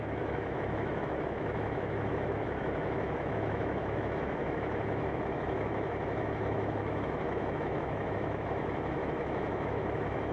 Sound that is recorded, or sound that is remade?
remade